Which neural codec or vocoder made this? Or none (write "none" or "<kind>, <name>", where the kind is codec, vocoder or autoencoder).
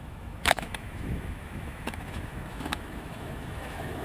autoencoder, DAC-VAE